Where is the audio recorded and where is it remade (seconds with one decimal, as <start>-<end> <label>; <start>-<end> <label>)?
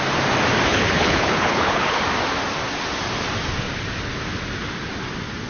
0.0-0.7 recorded; 0.7-2.0 remade; 2.0-5.5 recorded